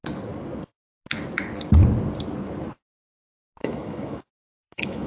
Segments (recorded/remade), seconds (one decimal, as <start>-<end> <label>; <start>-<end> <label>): 0.0-3.6 recorded; 3.6-5.1 remade